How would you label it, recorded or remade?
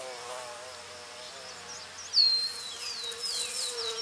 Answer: recorded